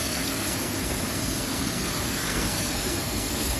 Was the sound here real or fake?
fake